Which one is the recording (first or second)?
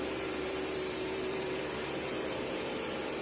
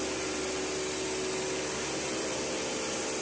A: second